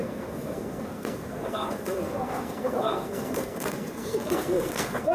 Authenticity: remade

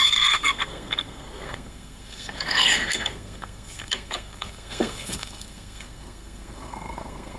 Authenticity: remade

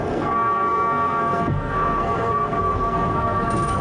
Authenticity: remade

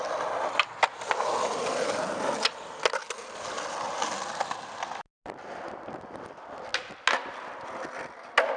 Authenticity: recorded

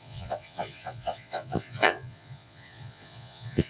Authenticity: remade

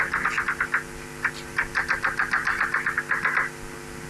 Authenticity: recorded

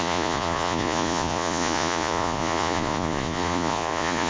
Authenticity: remade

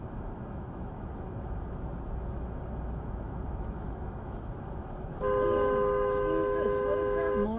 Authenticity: remade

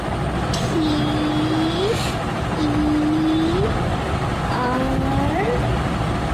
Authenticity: recorded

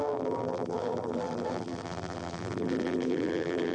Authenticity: remade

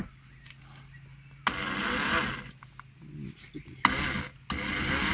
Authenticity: recorded